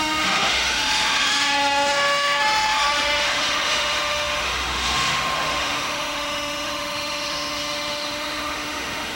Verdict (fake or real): fake